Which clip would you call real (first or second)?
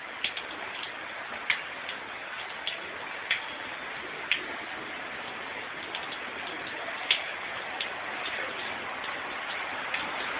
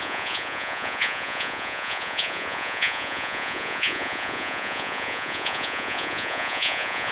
first